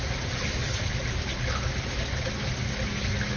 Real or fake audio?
real